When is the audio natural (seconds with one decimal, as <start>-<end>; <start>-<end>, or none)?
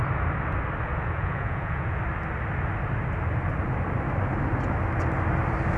0.0-0.9; 2.0-5.8